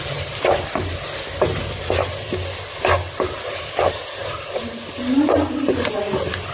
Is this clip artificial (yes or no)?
no